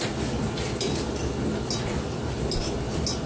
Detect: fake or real real